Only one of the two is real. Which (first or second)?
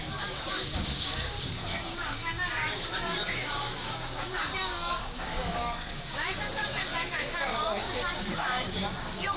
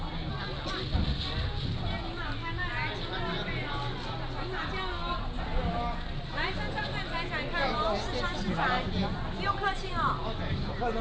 second